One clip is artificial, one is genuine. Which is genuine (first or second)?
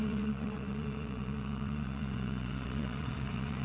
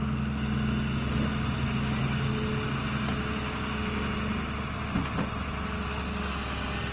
second